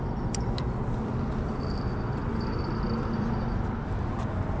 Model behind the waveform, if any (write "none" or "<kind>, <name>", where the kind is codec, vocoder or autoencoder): none